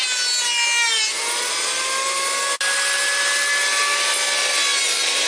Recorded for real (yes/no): yes